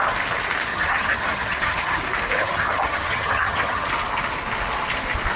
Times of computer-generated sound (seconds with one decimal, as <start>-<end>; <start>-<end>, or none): 0.7-2.0; 2.4-3.9